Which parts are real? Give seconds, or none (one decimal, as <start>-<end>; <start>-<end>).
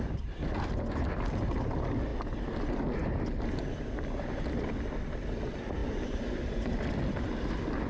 0.0-5.8; 6.9-7.9